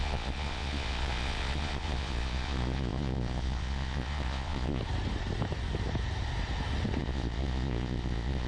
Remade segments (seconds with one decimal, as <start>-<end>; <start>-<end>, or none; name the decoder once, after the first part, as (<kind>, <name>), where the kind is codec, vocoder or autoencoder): 0.0-4.8 (vocoder, Vocos); 7.0-8.5